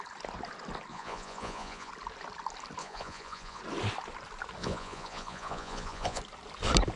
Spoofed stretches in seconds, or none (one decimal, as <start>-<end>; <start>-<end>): 0.9-1.9; 2.8-3.6; 4.6-6.2